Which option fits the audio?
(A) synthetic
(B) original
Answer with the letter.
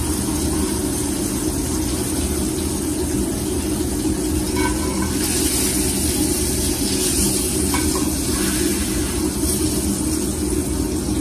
B